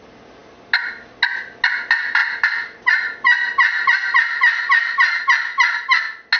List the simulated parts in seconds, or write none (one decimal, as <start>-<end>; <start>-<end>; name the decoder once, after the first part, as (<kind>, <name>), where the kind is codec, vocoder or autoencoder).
none